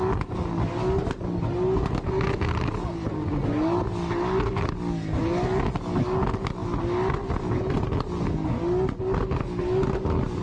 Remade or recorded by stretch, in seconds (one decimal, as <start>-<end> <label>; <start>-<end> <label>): 0.0-10.4 recorded